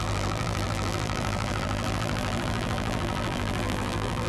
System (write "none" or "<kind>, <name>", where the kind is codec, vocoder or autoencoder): vocoder, BigVGAN v2